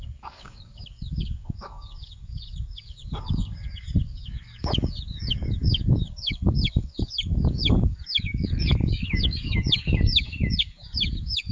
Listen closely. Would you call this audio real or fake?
fake